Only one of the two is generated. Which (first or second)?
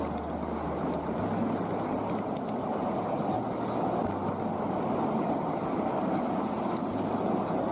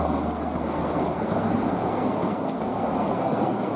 second